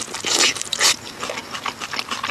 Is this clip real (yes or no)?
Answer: yes